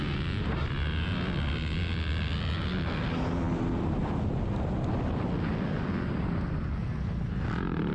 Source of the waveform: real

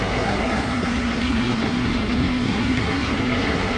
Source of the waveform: fake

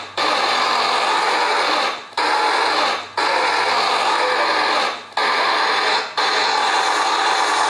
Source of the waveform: real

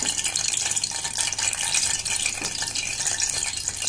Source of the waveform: real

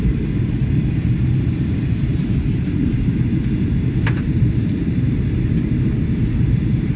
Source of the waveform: fake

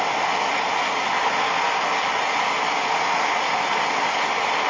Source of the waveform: real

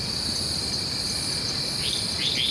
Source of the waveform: real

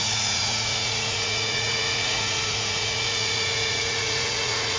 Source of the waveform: fake